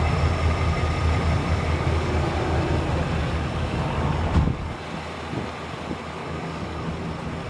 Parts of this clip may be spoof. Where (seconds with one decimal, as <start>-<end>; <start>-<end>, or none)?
1.4-2.4; 3.2-4.8; 6.2-6.9